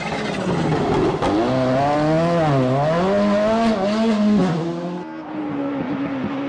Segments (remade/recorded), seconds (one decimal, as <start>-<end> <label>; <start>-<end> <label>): 0.0-6.5 recorded